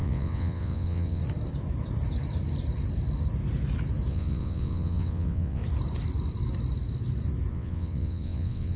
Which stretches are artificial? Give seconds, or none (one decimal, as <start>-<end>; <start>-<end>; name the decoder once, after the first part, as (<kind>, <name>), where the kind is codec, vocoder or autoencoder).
0.0-1.2 (vocoder, WaveNeXt); 4.1-5.6; 7.5-8.8